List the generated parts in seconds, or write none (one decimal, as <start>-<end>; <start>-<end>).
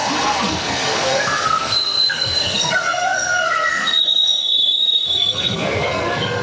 0.0-6.4